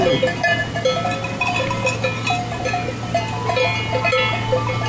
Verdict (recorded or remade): recorded